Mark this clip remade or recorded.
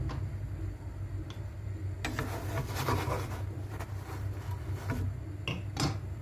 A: recorded